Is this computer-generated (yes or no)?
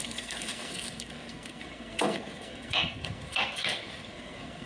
yes